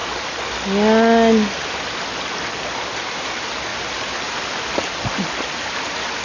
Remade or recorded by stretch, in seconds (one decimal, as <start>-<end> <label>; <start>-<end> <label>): 0.0-6.2 recorded